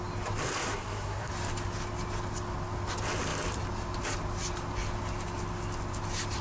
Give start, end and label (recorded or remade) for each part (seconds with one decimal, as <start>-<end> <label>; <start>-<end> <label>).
0.0-0.6 recorded; 0.6-1.3 remade; 1.3-6.4 recorded